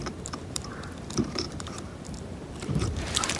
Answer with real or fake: fake